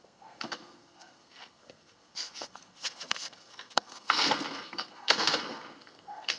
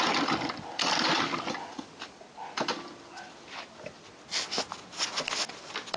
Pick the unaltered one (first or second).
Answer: second